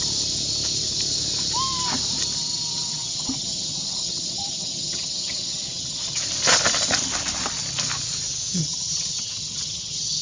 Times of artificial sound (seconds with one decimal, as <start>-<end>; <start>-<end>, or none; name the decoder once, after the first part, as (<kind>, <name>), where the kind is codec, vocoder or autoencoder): 2.4-6.2 (vocoder, HiFi-GAN); 8.6-10.2